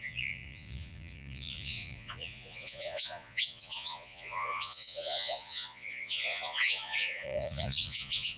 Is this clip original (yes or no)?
no